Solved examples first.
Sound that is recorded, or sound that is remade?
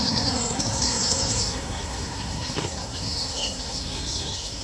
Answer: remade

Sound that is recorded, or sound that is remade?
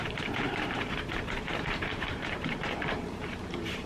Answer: remade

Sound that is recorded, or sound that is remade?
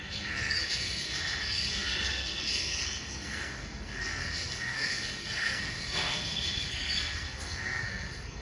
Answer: remade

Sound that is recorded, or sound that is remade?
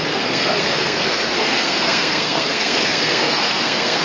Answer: remade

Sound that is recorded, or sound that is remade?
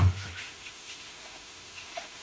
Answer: remade